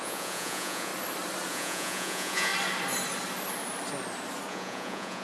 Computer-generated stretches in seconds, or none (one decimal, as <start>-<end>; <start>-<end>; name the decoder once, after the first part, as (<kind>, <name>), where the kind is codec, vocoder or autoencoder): 0.0-0.9 (vocoder, Vocos); 1.5-2.5; 4.5-5.2

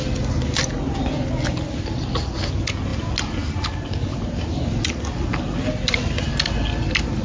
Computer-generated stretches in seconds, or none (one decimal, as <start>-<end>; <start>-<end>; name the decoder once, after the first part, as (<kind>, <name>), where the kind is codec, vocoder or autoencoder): none

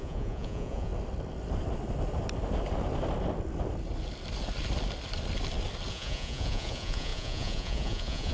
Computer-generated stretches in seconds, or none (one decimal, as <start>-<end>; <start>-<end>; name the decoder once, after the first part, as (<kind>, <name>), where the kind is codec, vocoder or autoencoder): 0.0-0.9 (vocoder, Vocos); 5.9-8.3